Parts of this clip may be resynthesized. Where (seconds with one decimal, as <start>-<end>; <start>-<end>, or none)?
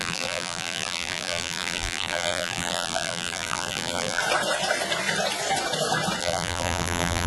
0.0-4.2; 6.2-7.3